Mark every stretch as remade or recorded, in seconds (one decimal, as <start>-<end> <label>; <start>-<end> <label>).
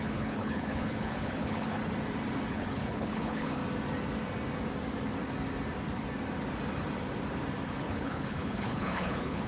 0.0-1.8 remade; 1.8-2.5 recorded; 2.5-3.6 remade; 3.6-7.7 recorded; 7.7-9.5 remade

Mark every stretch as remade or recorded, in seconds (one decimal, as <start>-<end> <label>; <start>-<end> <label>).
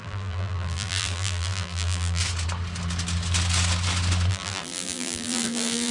0.0-2.2 remade; 2.2-4.3 recorded; 4.3-5.9 remade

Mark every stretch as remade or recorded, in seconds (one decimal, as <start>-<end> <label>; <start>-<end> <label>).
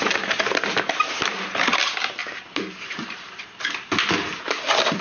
0.0-2.2 recorded; 2.2-3.4 remade; 3.4-5.0 recorded